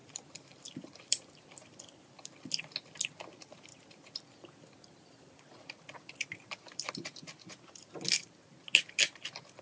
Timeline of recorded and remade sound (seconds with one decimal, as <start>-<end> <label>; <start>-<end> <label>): 0.0-2.1 remade; 2.1-3.7 recorded; 3.7-7.9 remade; 7.9-9.6 recorded